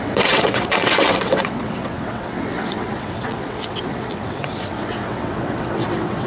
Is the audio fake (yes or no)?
yes